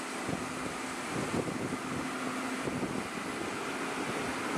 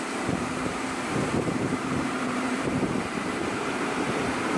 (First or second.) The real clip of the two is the first